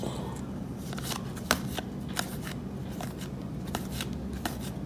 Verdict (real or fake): real